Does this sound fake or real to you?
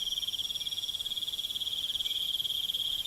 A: real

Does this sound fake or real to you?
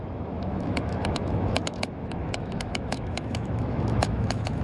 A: fake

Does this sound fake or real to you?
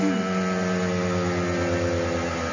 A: real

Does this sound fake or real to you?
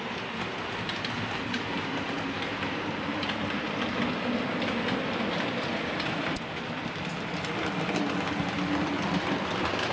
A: real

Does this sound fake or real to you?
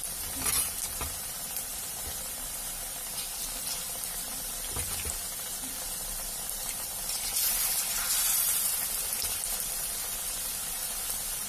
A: fake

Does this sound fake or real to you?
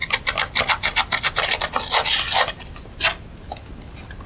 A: real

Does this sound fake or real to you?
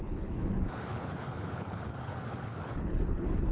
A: fake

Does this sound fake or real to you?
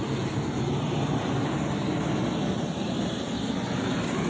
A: real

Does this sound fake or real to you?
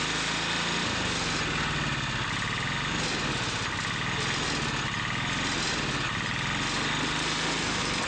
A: real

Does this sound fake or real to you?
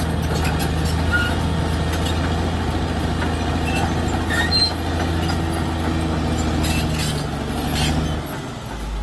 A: real